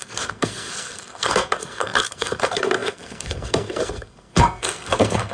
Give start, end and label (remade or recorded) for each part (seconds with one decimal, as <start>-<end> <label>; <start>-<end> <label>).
0.0-5.3 remade